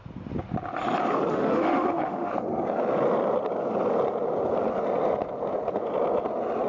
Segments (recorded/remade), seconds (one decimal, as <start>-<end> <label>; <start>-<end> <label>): 0.0-1.3 recorded; 1.3-2.3 remade; 2.3-6.7 recorded